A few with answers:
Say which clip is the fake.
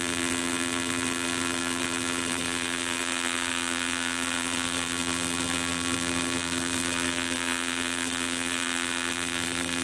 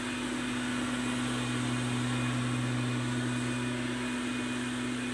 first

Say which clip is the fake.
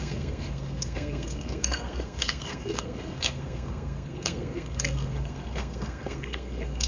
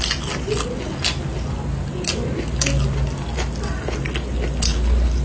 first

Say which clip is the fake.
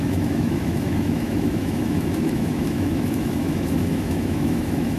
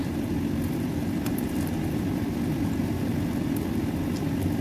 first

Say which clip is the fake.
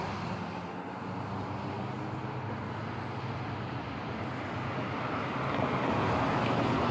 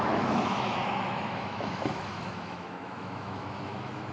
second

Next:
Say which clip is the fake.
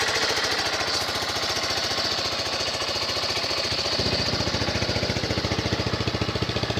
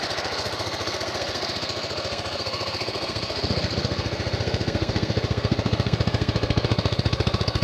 second